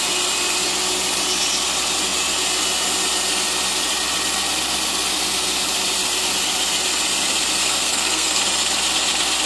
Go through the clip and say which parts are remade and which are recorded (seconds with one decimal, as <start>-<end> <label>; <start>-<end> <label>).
0.0-7.6 recorded; 7.6-8.4 remade; 8.4-9.5 recorded